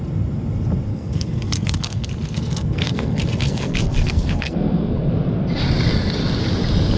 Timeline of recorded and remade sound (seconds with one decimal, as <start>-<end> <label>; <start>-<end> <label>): 0.0-0.9 recorded; 0.9-5.1 remade; 5.1-7.0 recorded